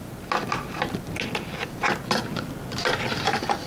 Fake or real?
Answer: real